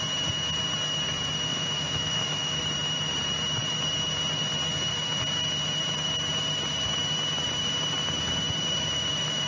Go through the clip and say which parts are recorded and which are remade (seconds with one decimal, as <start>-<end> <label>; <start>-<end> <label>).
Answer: 0.0-1.5 recorded; 1.5-2.6 remade; 2.6-9.5 recorded